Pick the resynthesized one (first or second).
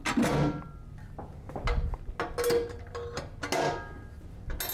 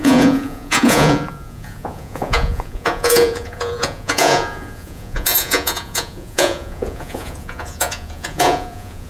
second